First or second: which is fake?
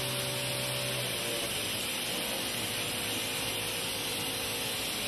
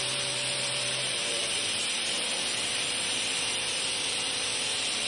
second